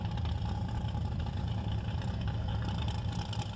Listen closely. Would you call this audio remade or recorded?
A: remade